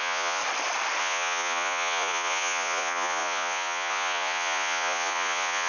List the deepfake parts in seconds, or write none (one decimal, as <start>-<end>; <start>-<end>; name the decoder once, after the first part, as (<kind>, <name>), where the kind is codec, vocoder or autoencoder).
0.0-0.4 (vocoder, Vocos); 1.0-5.7